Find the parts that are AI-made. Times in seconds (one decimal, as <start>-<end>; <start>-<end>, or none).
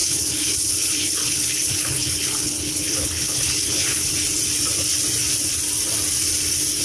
0.0-4.1